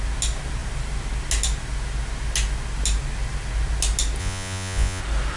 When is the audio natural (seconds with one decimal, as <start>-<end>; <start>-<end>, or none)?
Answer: 0.0-4.2; 5.0-5.4